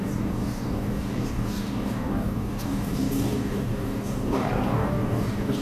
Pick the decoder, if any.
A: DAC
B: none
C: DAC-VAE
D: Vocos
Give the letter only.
A